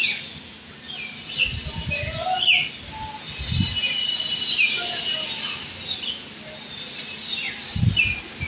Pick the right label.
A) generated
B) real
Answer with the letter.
B